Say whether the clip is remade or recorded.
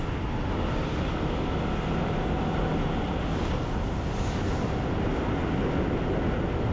recorded